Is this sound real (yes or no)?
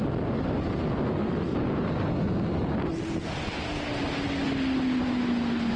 yes